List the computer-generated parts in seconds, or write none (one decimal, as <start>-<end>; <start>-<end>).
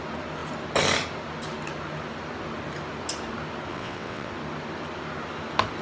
3.7-4.3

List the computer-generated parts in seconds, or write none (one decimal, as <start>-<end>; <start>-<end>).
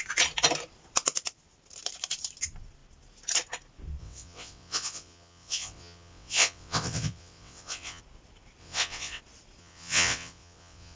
4.0-8.0; 8.6-9.2; 9.6-11.0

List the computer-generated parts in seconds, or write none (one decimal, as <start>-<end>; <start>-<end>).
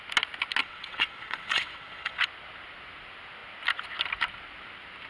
0.6-2.2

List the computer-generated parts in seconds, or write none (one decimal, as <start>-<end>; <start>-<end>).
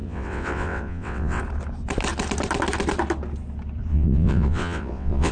0.0-1.4; 3.9-5.3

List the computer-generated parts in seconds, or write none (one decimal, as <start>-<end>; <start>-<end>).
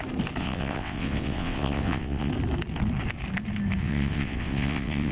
0.4-2.3; 3.8-5.1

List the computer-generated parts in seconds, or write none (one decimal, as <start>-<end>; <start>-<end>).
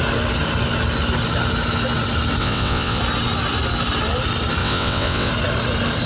2.4-3.0; 4.6-5.3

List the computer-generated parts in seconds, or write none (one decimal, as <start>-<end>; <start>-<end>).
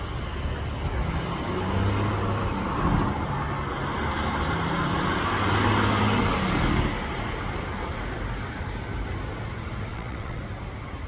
9.9-10.4